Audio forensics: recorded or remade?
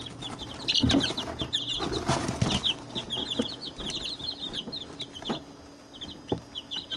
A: recorded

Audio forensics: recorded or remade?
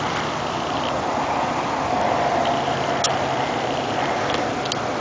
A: recorded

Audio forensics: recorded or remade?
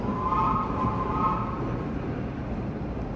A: recorded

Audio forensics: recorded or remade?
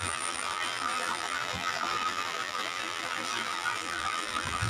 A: remade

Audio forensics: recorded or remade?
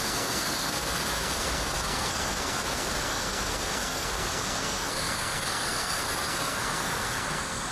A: remade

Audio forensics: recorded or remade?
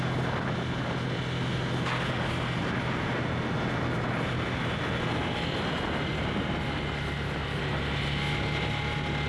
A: recorded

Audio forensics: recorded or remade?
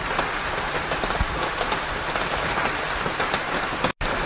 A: recorded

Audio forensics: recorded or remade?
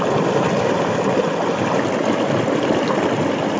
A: recorded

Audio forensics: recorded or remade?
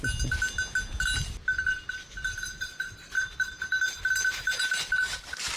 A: recorded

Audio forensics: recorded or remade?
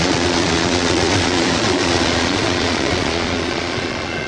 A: remade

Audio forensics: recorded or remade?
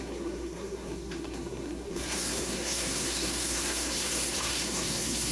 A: remade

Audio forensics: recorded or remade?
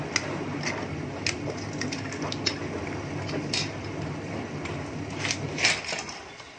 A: recorded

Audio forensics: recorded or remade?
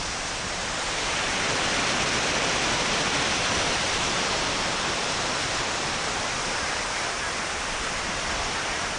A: recorded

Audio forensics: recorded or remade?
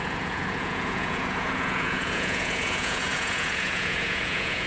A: remade